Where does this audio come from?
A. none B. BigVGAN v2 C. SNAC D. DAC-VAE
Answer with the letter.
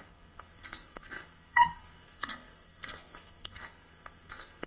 C